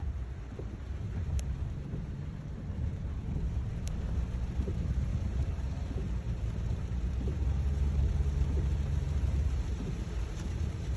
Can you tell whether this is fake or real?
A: fake